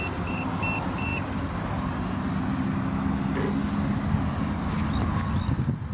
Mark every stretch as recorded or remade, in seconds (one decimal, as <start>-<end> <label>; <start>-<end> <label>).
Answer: 0.0-5.9 recorded